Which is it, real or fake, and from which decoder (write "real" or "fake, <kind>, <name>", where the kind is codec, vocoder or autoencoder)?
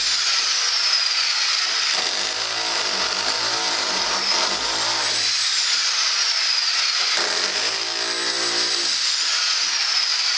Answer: real